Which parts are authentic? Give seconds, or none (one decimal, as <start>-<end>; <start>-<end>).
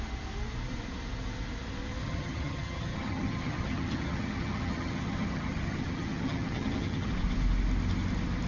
0.0-2.0; 7.1-8.5